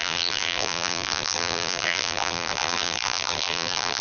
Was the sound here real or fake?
fake